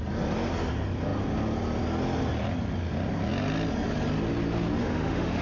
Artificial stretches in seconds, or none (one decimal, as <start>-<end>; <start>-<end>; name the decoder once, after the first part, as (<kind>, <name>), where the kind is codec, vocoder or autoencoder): 4.8-5.4 (autoencoder, DAC-VAE)